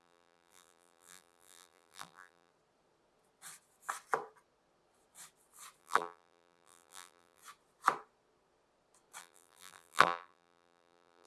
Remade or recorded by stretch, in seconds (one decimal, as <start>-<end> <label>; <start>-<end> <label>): 0.0-2.5 remade; 2.5-5.8 recorded; 5.8-7.4 remade; 7.4-9.2 recorded; 9.2-11.3 remade